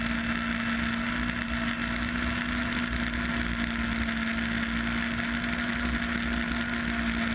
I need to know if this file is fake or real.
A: real